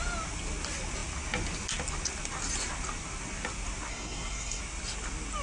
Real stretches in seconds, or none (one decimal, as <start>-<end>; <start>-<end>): 0.0-3.9; 4.6-5.4